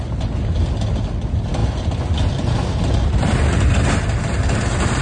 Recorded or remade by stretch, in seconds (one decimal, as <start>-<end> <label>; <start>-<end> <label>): 0.0-5.0 recorded